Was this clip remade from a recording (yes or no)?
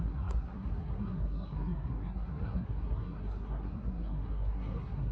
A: yes